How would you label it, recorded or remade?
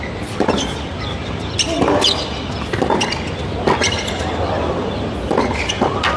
recorded